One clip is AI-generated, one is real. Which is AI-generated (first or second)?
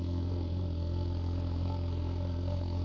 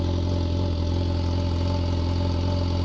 first